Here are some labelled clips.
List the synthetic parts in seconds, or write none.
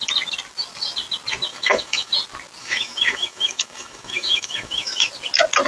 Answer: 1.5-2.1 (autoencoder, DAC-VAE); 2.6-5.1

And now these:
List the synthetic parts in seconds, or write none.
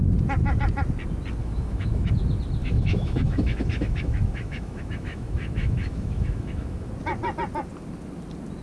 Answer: 1.4-2.1 (autoencoder, DAC-VAE); 2.6-6.9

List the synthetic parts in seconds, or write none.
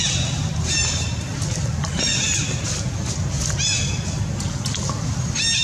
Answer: none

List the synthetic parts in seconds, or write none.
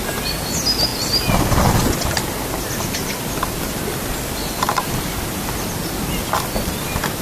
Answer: none